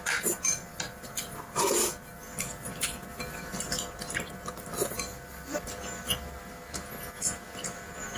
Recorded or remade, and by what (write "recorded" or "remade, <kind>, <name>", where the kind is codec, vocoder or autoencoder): recorded